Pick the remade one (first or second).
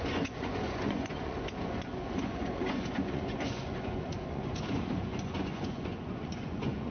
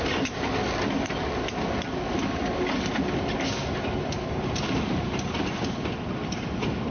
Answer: first